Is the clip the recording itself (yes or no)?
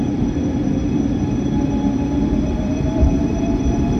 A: no